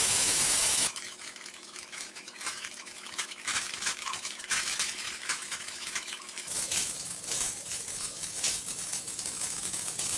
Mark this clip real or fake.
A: fake